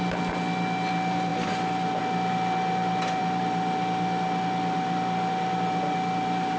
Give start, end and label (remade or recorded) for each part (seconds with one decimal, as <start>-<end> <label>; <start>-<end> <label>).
0.0-6.6 recorded